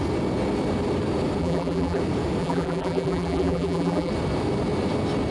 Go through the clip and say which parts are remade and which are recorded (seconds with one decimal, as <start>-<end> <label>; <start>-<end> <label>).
0.0-1.4 recorded; 1.4-2.0 remade; 2.0-2.4 recorded; 2.4-4.1 remade; 4.1-5.3 recorded